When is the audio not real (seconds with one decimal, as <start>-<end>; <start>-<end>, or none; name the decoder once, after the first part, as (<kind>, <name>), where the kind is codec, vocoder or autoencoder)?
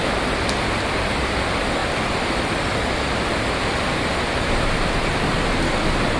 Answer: none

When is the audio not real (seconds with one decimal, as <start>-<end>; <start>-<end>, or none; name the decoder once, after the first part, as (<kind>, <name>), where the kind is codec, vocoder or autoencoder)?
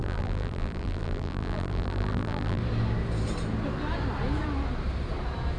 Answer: 0.0-2.6 (vocoder, BigVGAN v2)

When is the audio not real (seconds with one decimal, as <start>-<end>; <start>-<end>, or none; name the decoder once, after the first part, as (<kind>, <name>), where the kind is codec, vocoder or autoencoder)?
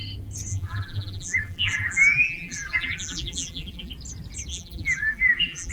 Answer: 0.5-3.9 (vocoder, BigVGAN v2); 4.5-5.7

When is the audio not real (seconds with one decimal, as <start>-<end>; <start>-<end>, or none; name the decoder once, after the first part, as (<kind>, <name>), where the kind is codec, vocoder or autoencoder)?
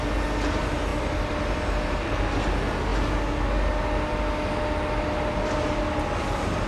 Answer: 0.9-2.0 (vocoder, BigVGAN v2)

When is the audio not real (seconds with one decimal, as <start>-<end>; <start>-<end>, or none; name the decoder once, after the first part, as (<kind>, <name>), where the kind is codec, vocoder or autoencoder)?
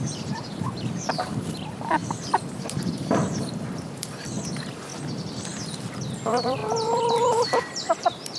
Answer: 0.0-4.9 (vocoder, BigVGAN v2); 6.0-8.4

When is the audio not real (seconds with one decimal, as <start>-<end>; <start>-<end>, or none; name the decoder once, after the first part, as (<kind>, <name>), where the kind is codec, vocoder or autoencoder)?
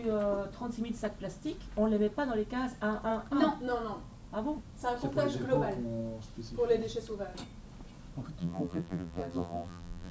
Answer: 8.4-10.1 (vocoder, BigVGAN v2)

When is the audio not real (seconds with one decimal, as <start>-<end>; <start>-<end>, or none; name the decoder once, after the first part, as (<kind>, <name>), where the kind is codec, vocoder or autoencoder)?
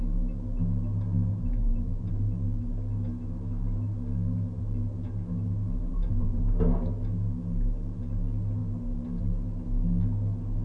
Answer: 1.3-2.2 (vocoder, BigVGAN v2); 5.9-6.4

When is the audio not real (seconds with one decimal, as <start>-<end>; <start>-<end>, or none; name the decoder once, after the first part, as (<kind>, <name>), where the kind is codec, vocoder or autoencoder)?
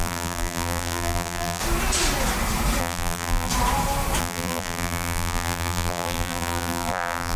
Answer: 0.0-1.6 (vocoder, BigVGAN v2); 2.8-3.5; 4.2-7.4